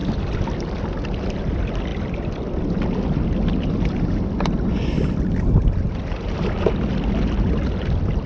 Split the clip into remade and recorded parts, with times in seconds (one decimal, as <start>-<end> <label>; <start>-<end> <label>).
0.0-8.3 recorded